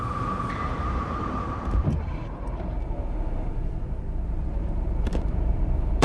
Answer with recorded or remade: remade